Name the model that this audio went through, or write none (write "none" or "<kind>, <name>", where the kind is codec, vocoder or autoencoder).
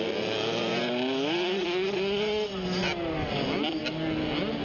none